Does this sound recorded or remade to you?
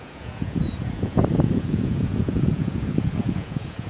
remade